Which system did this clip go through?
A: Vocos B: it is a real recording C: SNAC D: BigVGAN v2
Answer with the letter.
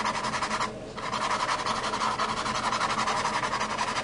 B